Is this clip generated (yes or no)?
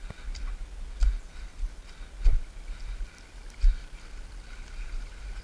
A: no